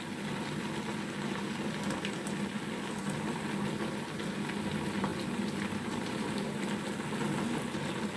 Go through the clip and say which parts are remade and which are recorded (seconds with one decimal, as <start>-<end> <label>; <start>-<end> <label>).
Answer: 0.0-8.2 recorded